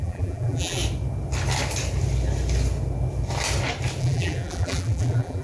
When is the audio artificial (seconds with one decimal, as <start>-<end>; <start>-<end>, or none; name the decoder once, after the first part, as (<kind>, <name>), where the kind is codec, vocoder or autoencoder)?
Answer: 0.0-0.8 (vocoder, BigVGAN v2); 4.0-5.4